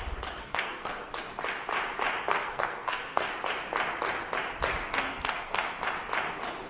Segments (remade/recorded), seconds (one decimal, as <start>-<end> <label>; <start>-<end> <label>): 0.0-0.4 recorded; 0.4-1.1 remade; 1.1-2.3 recorded; 2.3-3.3 remade; 3.3-4.9 recorded; 4.9-5.6 remade; 5.6-6.7 recorded